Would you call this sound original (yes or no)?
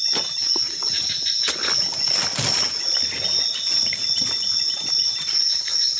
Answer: yes